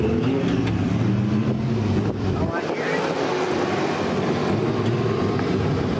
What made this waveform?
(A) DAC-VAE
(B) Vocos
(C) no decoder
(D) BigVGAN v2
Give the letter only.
C